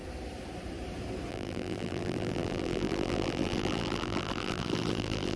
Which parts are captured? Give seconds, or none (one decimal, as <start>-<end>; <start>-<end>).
0.0-1.3